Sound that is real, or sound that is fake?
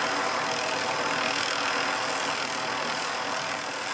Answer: real